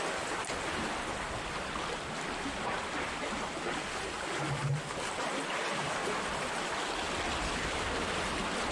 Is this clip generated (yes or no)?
no